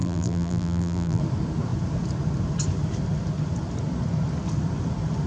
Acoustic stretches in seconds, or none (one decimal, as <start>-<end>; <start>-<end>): 1.2-5.3